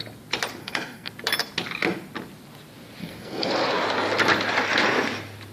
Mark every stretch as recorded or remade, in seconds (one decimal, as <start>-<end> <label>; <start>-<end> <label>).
0.0-0.6 recorded; 0.6-1.1 remade; 1.1-3.0 recorded; 3.0-3.5 remade; 3.5-5.5 recorded